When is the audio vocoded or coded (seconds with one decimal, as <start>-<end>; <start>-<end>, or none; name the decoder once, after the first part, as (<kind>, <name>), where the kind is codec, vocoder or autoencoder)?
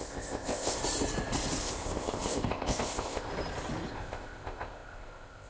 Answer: 0.0-0.8 (codec, ZipCodec); 1.6-3.3; 3.9-5.5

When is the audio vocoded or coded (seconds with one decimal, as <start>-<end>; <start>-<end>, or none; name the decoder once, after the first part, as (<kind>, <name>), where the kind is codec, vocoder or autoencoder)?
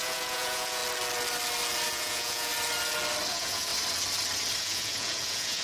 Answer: 0.0-0.8 (vocoder, Vocos); 1.9-2.5; 3.3-3.7; 4.6-5.6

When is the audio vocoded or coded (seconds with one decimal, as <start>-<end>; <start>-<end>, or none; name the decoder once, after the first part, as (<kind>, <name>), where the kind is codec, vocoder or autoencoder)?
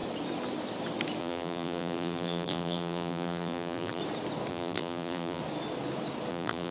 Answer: 1.2-4.0 (vocoder, BigVGAN v2); 4.5-5.4; 6.3-6.7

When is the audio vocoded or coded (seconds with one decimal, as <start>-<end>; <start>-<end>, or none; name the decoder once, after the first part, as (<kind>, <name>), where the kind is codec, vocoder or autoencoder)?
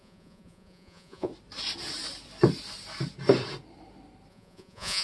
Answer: 0.0-1.3 (vocoder, Vocos); 4.3-5.0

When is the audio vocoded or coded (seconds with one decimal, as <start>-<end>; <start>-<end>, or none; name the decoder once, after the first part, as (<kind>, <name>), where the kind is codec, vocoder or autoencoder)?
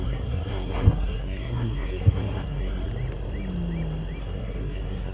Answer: 0.0-2.9 (codec, SNAC); 4.2-5.1